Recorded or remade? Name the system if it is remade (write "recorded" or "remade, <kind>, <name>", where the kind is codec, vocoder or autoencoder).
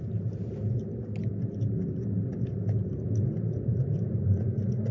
recorded